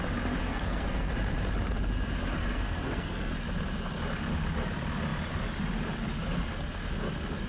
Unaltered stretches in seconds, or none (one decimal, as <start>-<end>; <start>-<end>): 0.0-0.4; 1.1-2.4; 3.3-7.5